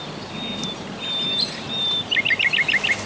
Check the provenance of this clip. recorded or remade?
recorded